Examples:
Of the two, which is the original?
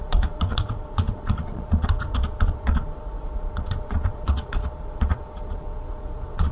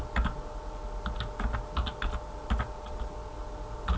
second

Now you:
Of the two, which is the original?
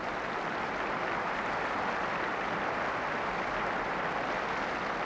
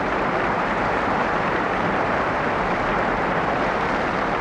first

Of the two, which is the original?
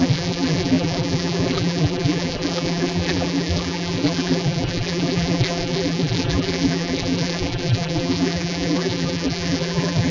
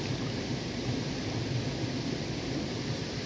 second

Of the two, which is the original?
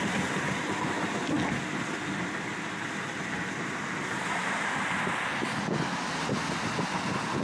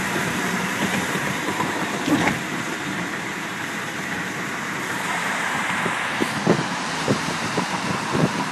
first